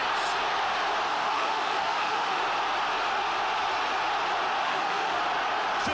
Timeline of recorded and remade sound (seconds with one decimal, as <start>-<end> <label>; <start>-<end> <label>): 0.0-1.1 recorded; 1.1-2.4 remade; 2.4-4.6 recorded; 4.6-5.2 remade; 5.2-5.9 recorded